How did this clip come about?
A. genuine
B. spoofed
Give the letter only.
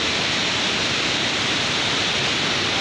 A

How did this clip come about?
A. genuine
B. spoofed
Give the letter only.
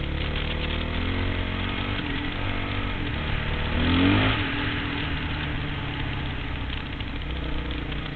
A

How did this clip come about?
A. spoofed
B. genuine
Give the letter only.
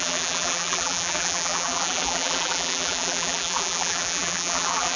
A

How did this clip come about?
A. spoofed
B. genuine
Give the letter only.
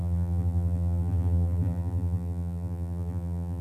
A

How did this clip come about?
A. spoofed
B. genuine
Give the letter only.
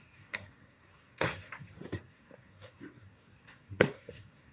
A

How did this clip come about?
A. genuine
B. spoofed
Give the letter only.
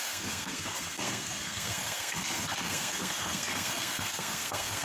B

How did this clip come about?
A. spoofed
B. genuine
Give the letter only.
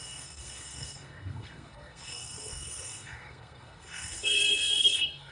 A